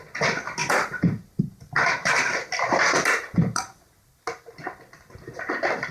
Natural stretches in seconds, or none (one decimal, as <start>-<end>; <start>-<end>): 0.0-0.6; 4.1-5.9